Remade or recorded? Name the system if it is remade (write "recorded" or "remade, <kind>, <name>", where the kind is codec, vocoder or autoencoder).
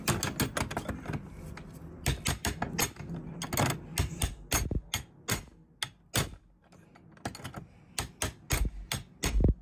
recorded